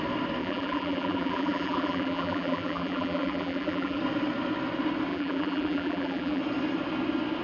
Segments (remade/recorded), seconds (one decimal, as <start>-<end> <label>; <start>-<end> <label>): 0.0-0.4 recorded; 0.4-4.0 remade; 4.0-5.1 recorded; 5.1-6.4 remade; 6.4-7.4 recorded